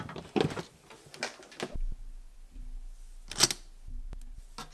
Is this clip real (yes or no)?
yes